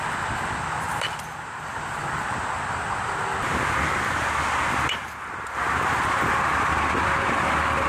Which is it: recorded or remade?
recorded